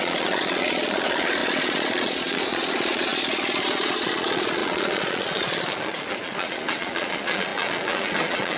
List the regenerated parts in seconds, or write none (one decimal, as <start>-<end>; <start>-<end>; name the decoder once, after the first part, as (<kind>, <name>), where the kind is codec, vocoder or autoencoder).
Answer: 0.0-8.6 (vocoder, Vocos)